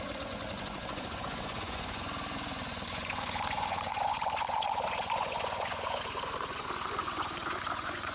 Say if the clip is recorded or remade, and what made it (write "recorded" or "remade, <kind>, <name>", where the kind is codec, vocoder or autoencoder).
remade, vocoder, Vocos